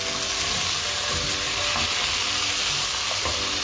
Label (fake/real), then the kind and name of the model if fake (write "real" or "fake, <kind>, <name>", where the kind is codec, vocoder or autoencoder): real